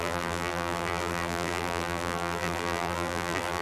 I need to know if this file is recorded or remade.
remade